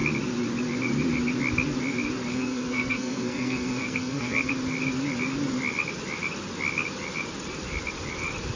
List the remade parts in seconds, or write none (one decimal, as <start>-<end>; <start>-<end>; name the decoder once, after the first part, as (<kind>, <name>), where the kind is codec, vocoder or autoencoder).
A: 2.3-4.5 (codec, SNAC)